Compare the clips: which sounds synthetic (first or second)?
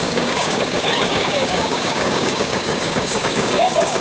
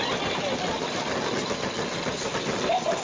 first